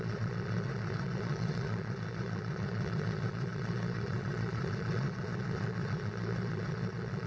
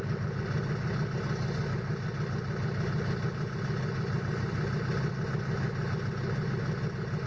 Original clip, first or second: second